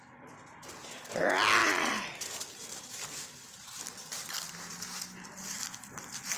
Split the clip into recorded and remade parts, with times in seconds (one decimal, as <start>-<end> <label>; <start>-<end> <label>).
0.0-6.4 recorded